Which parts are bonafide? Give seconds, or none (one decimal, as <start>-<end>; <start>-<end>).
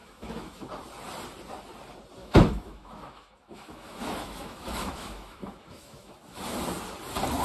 0.7-2.2; 6.6-7.4